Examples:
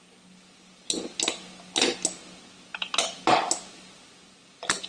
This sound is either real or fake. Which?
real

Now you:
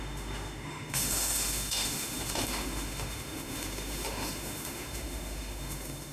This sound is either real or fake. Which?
fake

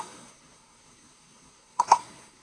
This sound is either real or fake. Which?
fake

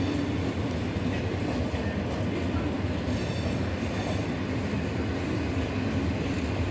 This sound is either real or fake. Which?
real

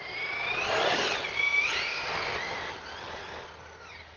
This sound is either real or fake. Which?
real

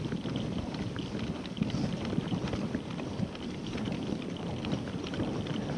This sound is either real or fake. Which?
real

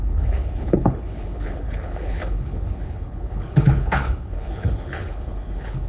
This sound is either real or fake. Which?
fake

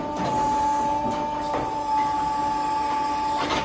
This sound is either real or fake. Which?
real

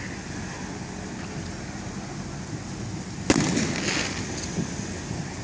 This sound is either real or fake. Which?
real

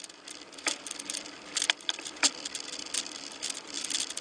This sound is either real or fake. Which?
real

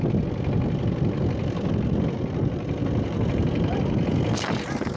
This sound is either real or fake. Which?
real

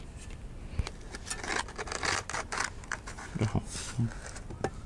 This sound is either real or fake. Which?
real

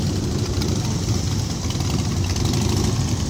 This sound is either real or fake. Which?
real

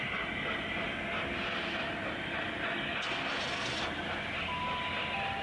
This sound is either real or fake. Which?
real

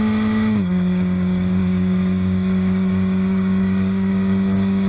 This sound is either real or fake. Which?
fake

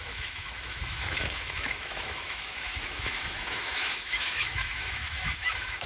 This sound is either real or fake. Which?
fake